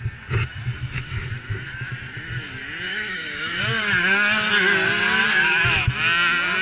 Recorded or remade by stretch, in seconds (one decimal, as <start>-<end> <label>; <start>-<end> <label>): 0.0-0.8 recorded; 0.8-1.3 remade; 1.3-2.9 recorded; 2.9-3.6 remade; 3.6-5.3 recorded; 5.3-5.9 remade; 5.9-6.6 recorded